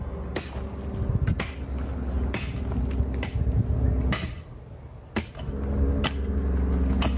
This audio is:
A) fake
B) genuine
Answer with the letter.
B